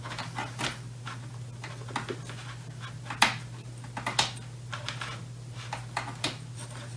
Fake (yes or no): no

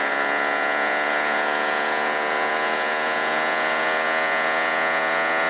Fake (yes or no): yes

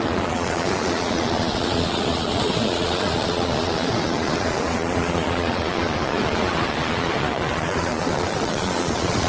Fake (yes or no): yes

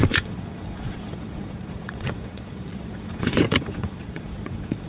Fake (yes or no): yes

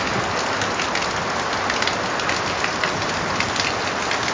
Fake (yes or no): no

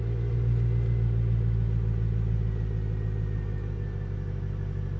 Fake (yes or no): no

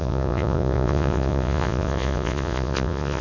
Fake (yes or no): yes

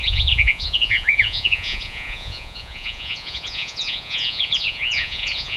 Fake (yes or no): yes